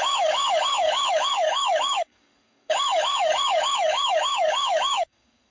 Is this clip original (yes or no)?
no